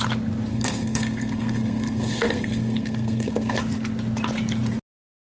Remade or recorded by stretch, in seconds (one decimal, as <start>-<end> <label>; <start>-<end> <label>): 0.0-0.5 recorded; 0.5-3.6 remade; 3.6-5.2 recorded